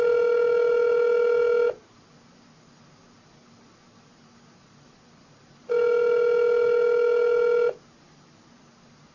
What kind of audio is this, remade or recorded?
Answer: recorded